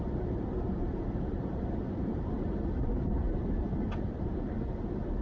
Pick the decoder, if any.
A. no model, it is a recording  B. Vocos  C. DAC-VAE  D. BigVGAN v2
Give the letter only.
D